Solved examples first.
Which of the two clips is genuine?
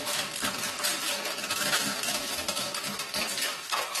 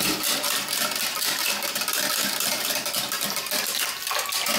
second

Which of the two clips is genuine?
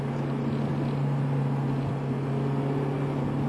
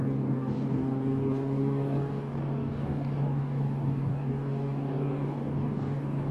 first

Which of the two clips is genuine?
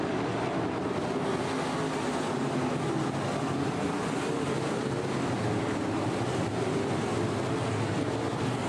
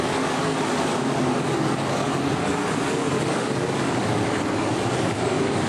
first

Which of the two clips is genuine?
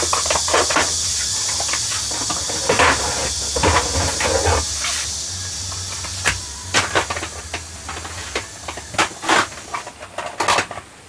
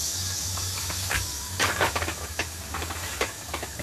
first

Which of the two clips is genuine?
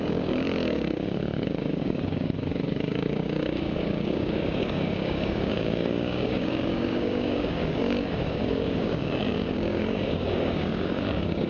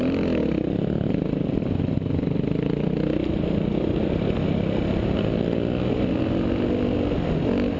second